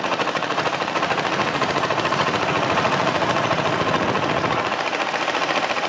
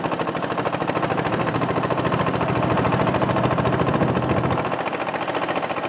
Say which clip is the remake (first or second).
first